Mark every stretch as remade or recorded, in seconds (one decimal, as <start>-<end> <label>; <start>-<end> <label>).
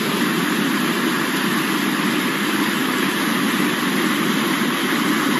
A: 0.0-5.4 recorded